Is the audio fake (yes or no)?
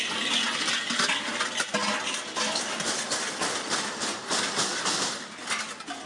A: no